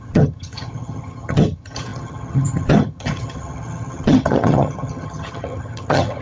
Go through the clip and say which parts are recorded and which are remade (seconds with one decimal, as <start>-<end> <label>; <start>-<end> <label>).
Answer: 0.0-6.2 remade